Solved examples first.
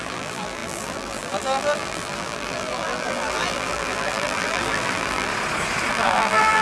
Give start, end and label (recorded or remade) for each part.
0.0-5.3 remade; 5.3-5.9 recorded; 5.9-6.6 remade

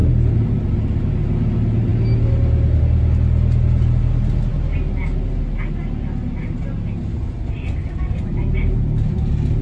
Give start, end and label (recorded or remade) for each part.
0.0-9.6 recorded

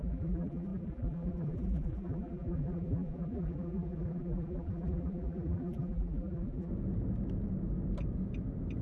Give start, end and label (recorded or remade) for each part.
0.0-6.7 remade; 6.7-8.8 recorded

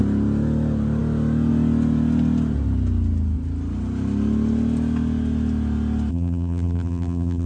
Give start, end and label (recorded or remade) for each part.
0.0-6.1 recorded; 6.1-7.5 remade

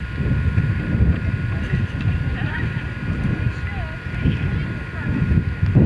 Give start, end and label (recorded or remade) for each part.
0.0-5.9 remade

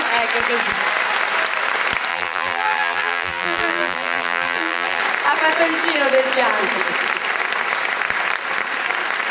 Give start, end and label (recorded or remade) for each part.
0.0-2.1 recorded; 2.1-5.0 remade; 5.0-9.3 recorded